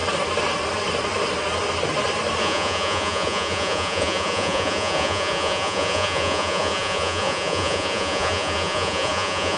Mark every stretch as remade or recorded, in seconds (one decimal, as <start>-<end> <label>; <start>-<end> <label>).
0.0-2.4 recorded; 2.4-9.6 remade